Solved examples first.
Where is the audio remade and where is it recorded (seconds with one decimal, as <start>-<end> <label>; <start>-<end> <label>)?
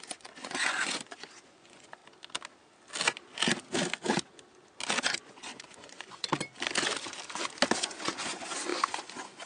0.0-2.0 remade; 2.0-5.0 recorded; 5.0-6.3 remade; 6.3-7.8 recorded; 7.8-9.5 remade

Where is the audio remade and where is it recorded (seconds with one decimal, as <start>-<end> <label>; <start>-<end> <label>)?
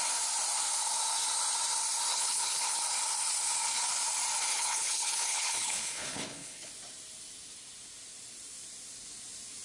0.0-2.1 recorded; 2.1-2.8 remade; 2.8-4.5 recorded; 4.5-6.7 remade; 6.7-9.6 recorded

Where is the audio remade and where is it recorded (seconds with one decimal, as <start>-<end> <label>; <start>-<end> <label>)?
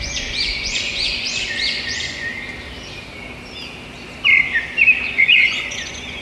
0.0-2.3 remade; 2.3-5.1 recorded; 5.1-6.2 remade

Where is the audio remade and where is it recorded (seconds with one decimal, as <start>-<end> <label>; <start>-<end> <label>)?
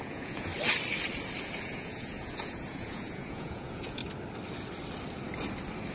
0.0-0.5 remade; 0.5-1.6 recorded; 1.6-4.0 remade; 4.0-5.9 recorded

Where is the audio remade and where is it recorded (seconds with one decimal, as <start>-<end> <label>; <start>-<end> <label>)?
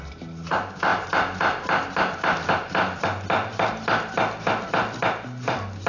0.0-5.9 recorded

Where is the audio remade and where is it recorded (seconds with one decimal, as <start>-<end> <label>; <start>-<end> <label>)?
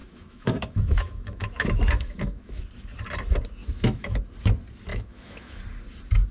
0.0-2.6 remade; 2.6-3.6 recorded; 3.6-4.2 remade; 4.2-4.9 recorded; 4.9-5.6 remade; 5.6-6.3 recorded